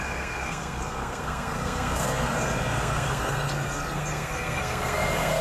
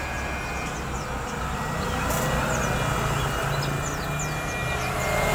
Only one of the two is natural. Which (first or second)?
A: second